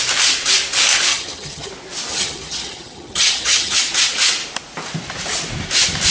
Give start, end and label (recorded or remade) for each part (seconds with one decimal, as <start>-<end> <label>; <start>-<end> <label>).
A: 0.0-1.1 recorded; 1.1-1.7 remade; 1.7-2.1 recorded; 2.1-3.8 remade; 3.8-6.1 recorded